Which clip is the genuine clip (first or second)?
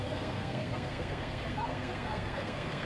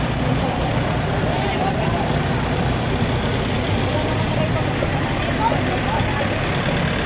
second